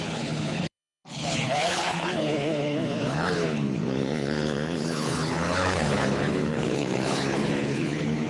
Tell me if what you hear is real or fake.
fake